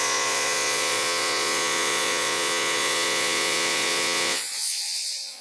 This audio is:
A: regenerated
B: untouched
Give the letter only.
A